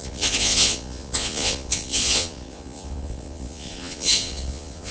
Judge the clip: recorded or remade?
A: remade